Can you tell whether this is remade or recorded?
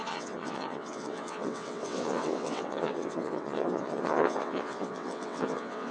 remade